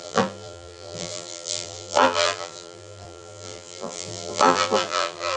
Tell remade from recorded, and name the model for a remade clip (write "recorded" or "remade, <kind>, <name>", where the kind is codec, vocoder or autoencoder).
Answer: remade, vocoder, BigVGAN v2